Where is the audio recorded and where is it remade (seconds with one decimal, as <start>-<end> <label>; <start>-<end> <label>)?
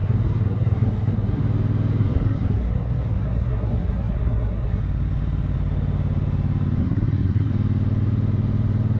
0.0-1.4 remade; 1.4-2.0 recorded; 2.0-4.8 remade; 4.8-6.8 recorded; 6.8-7.5 remade; 7.5-9.0 recorded